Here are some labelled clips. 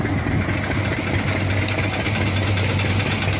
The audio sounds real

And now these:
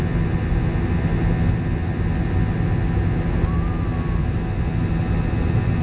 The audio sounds real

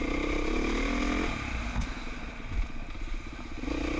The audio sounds real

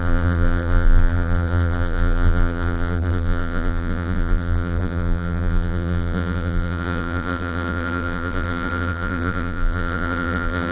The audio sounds fake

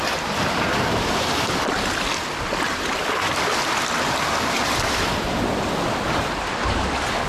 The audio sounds real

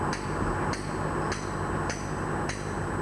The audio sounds real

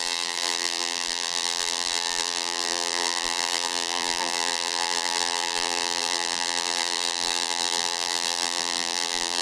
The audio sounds fake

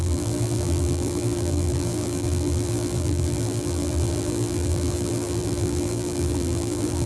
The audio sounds fake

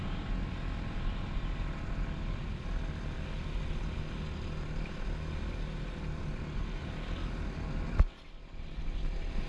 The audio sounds real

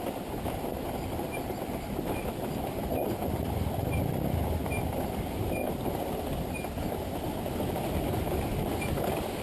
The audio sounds real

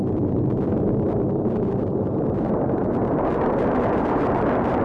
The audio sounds fake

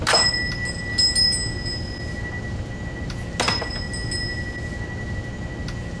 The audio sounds real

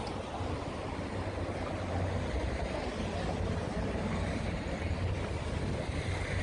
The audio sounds fake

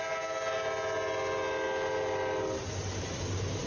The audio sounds real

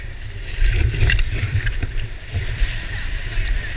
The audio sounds fake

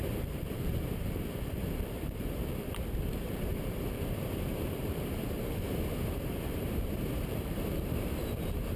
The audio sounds fake